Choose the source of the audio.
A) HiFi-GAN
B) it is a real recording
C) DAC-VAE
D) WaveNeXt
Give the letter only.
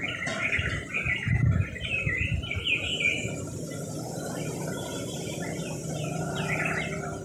B